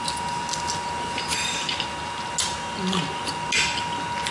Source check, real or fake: real